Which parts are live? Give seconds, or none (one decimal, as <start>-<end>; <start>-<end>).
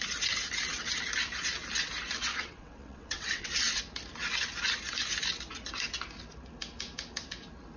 0.0-2.3; 3.8-7.8